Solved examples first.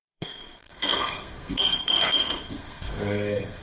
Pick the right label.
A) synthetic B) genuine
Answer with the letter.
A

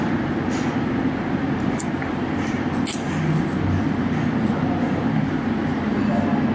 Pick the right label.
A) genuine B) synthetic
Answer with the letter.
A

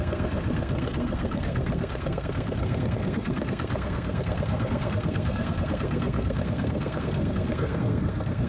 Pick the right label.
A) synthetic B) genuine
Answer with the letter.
A